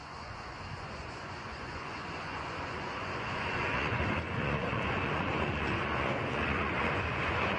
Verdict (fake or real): fake